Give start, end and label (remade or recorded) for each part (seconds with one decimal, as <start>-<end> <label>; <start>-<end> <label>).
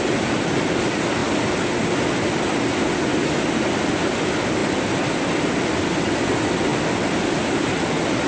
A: 0.0-8.3 recorded